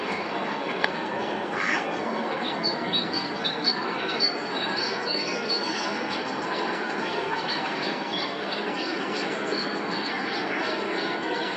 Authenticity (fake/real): fake